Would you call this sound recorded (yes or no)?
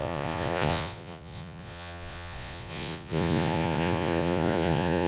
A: no